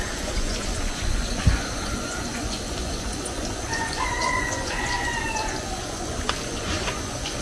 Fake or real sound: fake